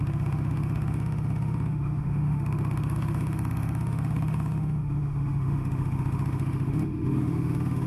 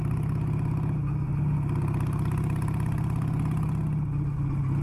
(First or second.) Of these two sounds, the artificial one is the first